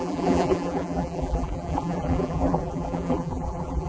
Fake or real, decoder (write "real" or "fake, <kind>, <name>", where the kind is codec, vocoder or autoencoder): fake, vocoder, BigVGAN v2